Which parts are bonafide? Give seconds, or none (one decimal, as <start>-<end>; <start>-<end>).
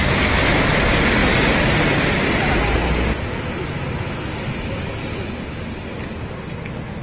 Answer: 0.0-7.0